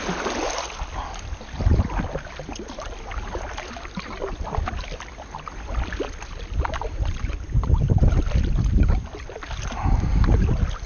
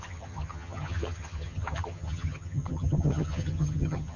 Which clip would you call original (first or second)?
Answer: first